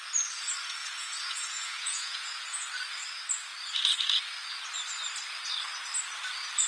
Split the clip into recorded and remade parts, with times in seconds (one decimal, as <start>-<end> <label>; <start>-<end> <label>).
0.0-0.8 recorded; 0.8-2.7 remade; 2.7-6.7 recorded